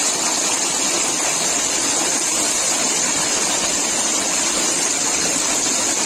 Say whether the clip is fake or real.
real